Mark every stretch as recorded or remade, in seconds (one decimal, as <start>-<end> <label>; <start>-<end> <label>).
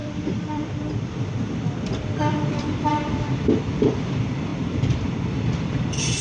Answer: 0.0-2.9 remade; 2.9-3.5 recorded; 3.5-6.2 remade